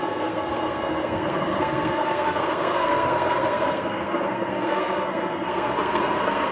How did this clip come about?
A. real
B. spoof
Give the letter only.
B